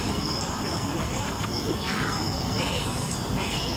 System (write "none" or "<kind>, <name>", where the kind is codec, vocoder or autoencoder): codec, SNAC